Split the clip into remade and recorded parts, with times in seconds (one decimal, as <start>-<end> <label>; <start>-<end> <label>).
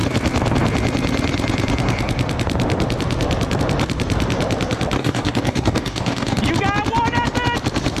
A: 0.0-5.0 recorded; 5.0-6.4 remade; 6.4-8.0 recorded